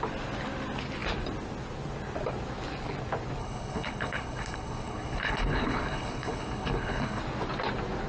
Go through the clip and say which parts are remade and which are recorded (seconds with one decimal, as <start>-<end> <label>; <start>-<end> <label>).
0.0-3.4 recorded; 3.4-7.2 remade; 7.2-8.1 recorded